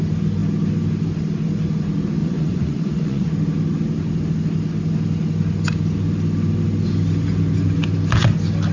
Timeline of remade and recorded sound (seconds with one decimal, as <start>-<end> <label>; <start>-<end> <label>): 0.0-2.2 recorded; 2.2-3.3 remade; 3.3-8.7 recorded